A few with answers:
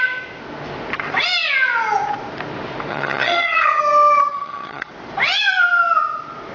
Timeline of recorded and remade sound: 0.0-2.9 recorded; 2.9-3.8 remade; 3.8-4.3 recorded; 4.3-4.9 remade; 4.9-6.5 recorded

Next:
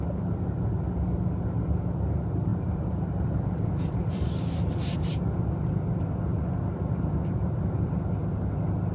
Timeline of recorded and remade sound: 0.0-2.5 recorded; 2.5-5.0 remade; 5.0-8.9 recorded

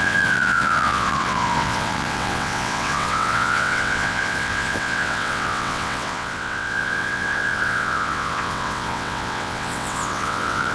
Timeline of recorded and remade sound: 0.0-10.7 remade

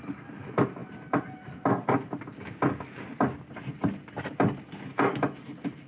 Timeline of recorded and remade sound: 0.0-5.9 recorded

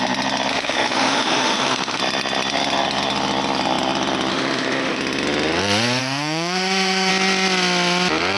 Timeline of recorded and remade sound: 0.0-0.5 recorded; 0.5-2.0 remade; 2.0-4.3 recorded; 4.3-5.0 remade; 5.0-6.0 recorded; 6.0-7.1 remade; 7.1-8.4 recorded

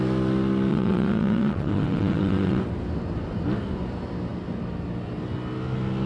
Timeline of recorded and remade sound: 0.0-0.7 recorded; 0.7-2.6 remade; 2.6-6.1 recorded

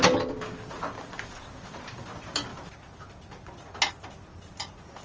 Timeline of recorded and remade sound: 0.0-5.0 recorded